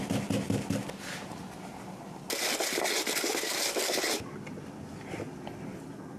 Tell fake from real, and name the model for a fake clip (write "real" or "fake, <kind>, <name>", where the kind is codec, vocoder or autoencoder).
real